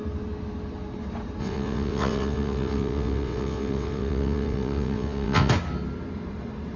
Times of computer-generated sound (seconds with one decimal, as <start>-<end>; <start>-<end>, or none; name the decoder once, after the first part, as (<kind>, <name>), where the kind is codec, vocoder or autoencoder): 1.4-5.5 (vocoder, WaveNeXt)

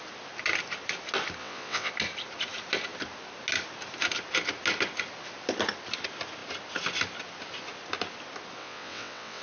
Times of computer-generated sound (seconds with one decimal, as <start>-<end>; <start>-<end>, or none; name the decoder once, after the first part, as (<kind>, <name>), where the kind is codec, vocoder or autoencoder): 1.4-1.9 (vocoder, WaveNeXt); 8.6-9.4

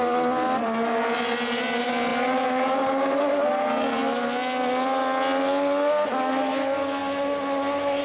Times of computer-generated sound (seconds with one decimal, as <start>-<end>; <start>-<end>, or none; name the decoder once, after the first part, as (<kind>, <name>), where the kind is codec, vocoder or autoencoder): none

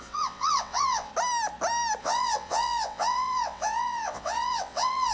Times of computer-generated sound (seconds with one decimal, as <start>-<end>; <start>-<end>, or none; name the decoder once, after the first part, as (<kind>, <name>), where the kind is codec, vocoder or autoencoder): 0.0-1.1 (vocoder, WaveNeXt); 2.0-5.1

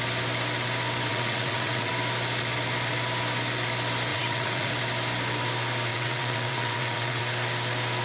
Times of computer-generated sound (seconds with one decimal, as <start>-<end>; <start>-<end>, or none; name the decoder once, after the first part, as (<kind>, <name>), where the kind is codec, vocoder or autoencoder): 1.1-1.9 (vocoder, WaveNeXt); 4.1-4.7; 5.9-7.2

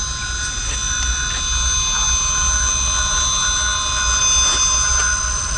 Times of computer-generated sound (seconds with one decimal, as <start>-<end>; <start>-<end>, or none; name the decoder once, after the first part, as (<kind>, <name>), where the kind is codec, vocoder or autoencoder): none